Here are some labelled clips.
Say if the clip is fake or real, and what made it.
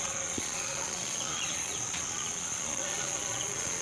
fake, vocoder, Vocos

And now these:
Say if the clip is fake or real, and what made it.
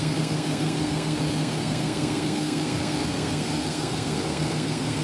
fake, codec, SNAC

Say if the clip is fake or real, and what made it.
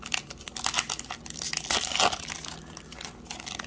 real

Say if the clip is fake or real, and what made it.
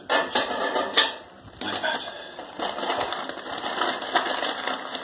real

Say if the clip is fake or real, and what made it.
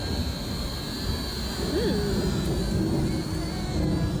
real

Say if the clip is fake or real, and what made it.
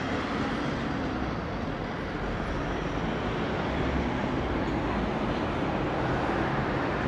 real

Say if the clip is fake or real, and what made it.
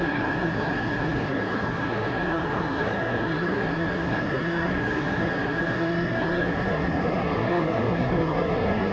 fake, codec, SNAC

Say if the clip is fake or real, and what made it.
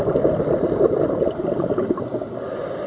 real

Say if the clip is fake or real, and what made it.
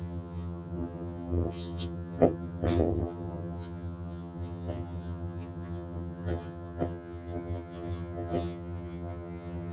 fake, vocoder, HiFi-GAN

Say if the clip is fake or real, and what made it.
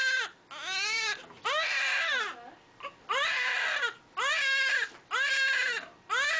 real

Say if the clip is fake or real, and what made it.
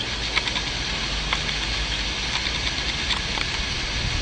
real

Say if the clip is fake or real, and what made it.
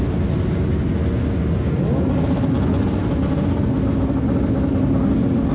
real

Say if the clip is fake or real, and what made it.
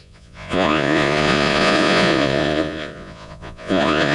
fake, vocoder, Vocos